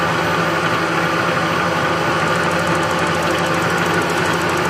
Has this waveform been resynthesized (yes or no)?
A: no